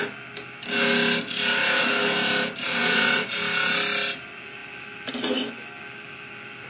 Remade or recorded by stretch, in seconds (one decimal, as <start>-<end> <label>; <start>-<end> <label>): 0.0-2.8 recorded; 2.8-3.3 remade; 3.3-6.7 recorded